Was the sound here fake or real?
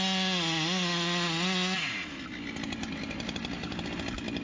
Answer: real